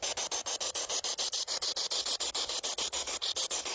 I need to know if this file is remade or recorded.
recorded